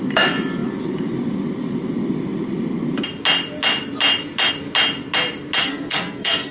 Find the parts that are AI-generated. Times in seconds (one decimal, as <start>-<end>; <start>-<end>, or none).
5.6-6.5